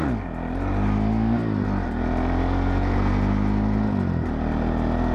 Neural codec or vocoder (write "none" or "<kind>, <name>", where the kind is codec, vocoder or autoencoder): none